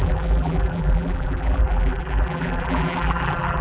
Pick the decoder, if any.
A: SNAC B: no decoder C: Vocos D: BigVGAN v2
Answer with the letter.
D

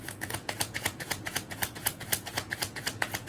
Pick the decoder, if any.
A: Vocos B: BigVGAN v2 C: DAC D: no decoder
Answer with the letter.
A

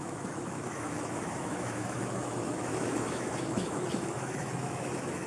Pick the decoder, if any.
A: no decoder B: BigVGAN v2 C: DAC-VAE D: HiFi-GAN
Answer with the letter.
C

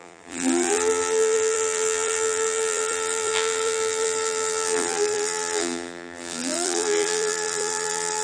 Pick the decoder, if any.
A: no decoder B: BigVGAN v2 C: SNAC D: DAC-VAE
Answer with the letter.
B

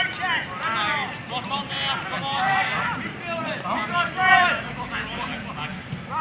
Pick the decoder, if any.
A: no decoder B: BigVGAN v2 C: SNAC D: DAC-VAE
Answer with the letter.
B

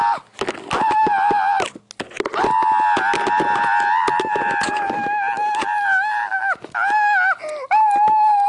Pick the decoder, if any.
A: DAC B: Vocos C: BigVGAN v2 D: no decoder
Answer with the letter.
D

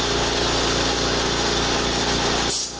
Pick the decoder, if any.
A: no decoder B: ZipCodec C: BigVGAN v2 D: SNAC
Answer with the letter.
A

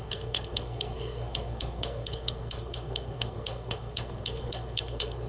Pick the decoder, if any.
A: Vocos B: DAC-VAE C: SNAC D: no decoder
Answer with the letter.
C